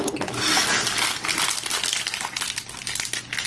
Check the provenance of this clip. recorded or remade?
recorded